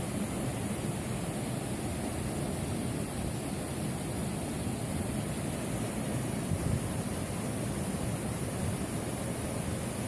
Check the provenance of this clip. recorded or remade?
recorded